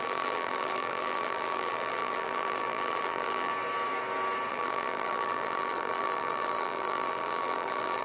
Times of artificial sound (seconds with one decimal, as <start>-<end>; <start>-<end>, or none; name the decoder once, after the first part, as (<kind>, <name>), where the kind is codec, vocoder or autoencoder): 0.0-3.5 (vocoder, BigVGAN v2); 4.5-8.0